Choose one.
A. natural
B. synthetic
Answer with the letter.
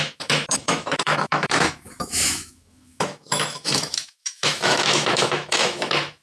B